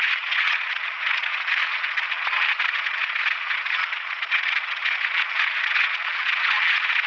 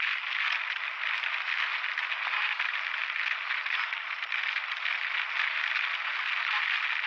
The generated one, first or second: first